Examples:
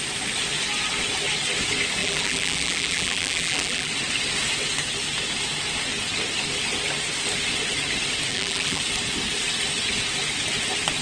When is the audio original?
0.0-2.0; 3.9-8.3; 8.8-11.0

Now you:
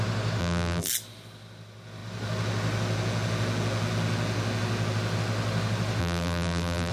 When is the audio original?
0.0-0.4; 0.9-6.0

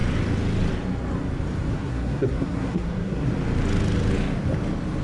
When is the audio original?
0.0-1.7; 3.3-5.0

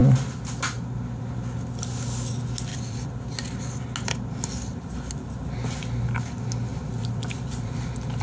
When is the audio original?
0.0-2.7; 3.6-4.7; 5.2-6.7

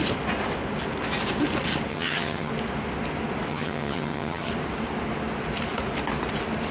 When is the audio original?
0.0-1.9; 2.5-3.5; 4.5-6.7

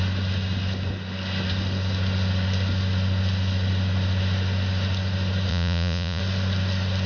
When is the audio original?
0.0-5.5; 6.2-7.1

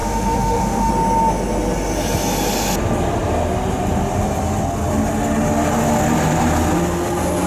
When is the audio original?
0.9-7.5

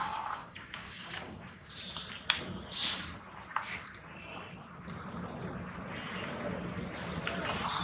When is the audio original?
1.7-7.8